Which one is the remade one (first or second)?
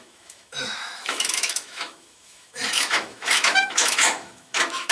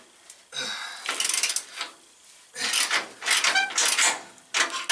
first